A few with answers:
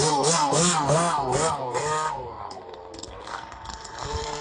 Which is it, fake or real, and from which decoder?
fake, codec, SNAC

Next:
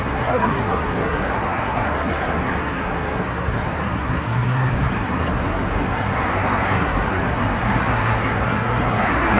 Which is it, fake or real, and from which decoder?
fake, codec, SNAC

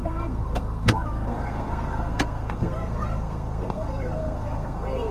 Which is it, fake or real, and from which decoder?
fake, codec, SNAC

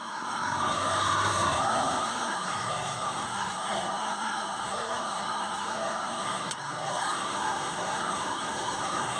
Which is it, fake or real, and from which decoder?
fake, codec, SNAC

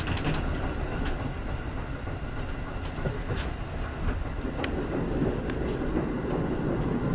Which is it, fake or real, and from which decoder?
real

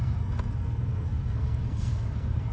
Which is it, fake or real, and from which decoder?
fake, codec, SNAC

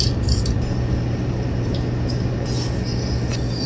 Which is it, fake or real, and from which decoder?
real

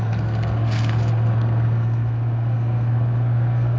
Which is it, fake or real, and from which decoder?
fake, codec, SNAC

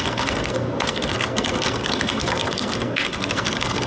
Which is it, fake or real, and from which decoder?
fake, codec, SNAC